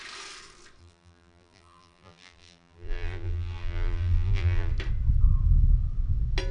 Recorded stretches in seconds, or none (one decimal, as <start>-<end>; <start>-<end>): 0.0-0.8; 4.7-6.5